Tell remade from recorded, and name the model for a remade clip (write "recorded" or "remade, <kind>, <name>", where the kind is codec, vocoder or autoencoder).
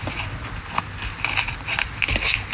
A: recorded